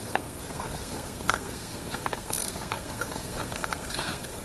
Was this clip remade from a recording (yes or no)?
yes